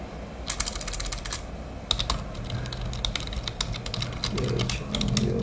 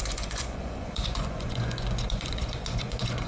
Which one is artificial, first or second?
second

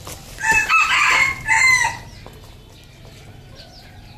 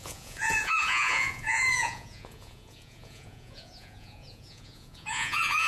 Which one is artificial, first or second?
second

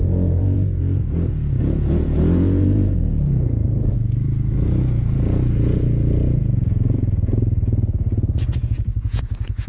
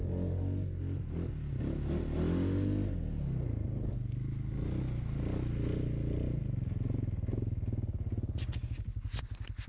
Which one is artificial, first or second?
first